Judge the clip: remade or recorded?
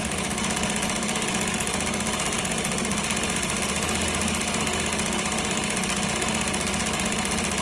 recorded